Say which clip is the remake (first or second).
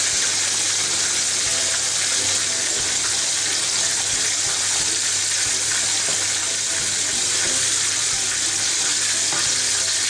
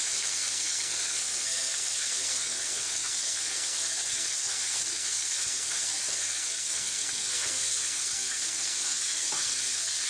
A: second